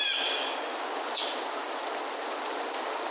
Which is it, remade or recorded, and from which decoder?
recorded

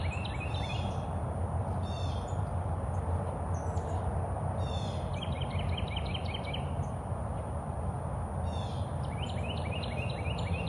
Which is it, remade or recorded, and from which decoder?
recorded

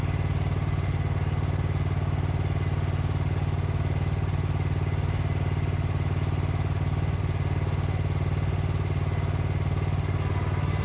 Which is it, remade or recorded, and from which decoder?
recorded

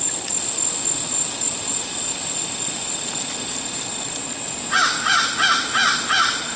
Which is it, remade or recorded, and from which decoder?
recorded